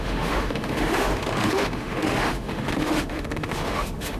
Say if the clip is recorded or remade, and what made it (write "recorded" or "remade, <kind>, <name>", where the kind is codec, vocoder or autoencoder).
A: remade, autoencoder, DAC-VAE